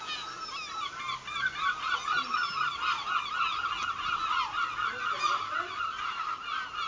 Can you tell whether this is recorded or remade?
recorded